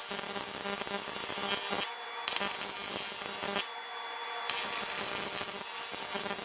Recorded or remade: recorded